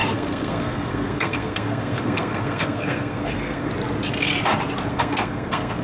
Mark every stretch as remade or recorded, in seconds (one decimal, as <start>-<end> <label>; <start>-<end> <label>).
0.0-3.7 remade; 3.7-4.9 recorded; 4.9-5.8 remade